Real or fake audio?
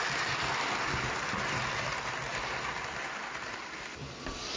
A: real